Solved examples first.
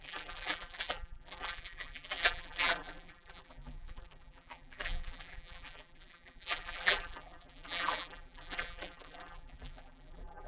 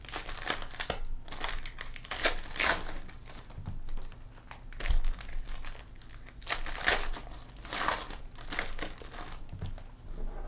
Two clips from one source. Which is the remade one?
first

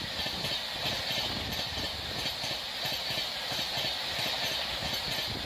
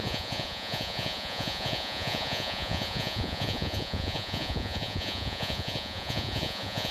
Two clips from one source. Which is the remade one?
second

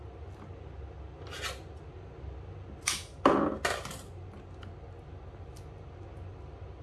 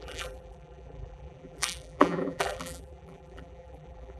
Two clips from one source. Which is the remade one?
second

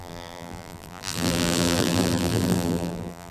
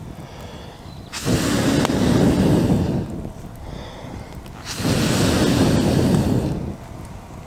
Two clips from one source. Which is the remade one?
first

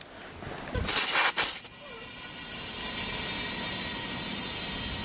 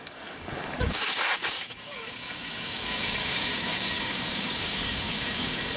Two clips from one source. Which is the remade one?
second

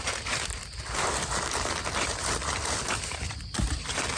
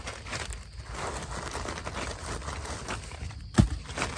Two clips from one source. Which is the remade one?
first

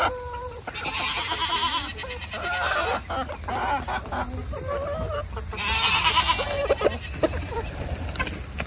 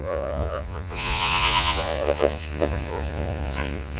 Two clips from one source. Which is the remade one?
second